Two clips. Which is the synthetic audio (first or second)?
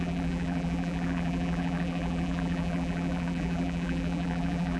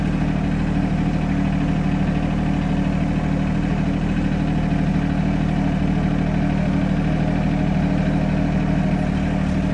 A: first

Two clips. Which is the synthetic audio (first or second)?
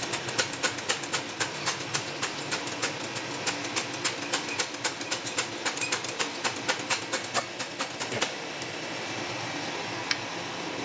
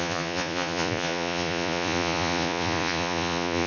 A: second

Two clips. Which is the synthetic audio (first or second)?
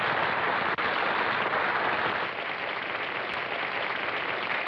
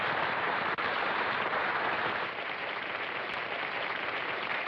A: second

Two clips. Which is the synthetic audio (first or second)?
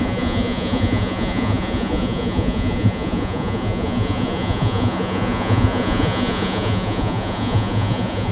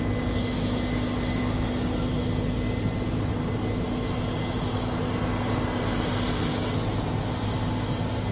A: first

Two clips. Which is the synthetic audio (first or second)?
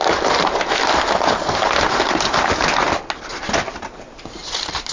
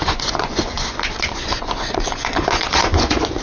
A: second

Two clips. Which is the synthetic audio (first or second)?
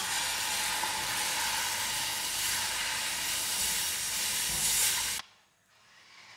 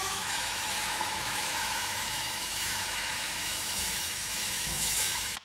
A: second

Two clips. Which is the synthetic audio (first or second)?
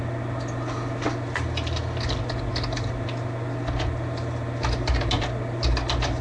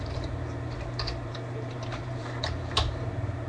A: second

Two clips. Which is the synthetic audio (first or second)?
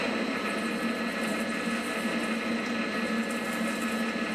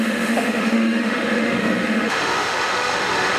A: second